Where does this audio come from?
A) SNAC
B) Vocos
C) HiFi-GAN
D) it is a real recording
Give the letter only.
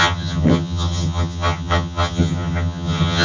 C